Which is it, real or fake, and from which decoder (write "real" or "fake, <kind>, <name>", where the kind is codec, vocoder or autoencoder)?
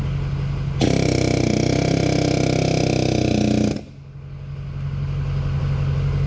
real